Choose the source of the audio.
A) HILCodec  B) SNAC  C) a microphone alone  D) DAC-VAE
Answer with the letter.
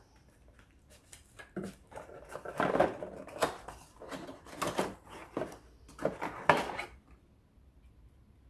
C